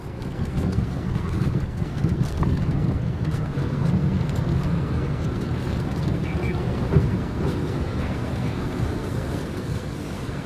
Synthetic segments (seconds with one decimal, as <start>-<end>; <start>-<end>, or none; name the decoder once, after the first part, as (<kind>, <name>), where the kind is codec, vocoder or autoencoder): 0.0-10.5 (codec, SNAC)